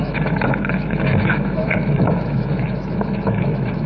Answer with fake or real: fake